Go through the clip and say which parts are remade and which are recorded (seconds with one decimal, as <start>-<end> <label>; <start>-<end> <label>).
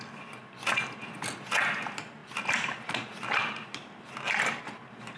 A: 0.0-5.2 recorded